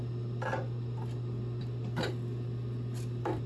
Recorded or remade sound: recorded